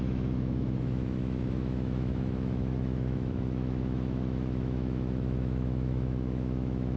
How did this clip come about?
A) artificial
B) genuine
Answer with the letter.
A